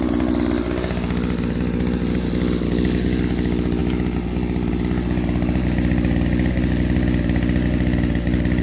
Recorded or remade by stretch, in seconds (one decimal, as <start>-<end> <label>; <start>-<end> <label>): 0.0-8.6 recorded

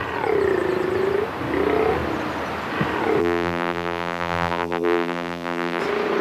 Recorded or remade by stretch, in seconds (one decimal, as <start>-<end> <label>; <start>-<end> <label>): 0.0-3.2 recorded; 3.2-5.8 remade; 5.8-6.2 recorded

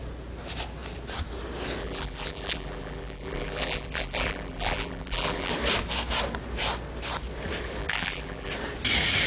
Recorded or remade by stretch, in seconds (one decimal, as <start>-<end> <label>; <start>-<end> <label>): 0.0-1.8 recorded; 1.8-5.5 remade; 5.5-7.8 recorded; 7.8-8.5 remade; 8.5-9.3 recorded

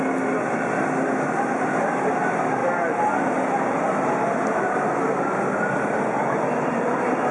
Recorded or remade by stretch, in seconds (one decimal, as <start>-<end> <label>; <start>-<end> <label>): 0.0-7.3 recorded

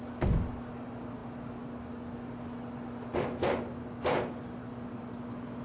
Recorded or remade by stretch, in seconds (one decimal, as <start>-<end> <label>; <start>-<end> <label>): 0.0-5.6 recorded